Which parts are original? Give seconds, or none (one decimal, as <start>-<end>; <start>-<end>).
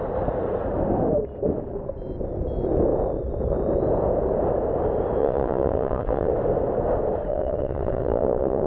0.0-5.2; 6.3-7.3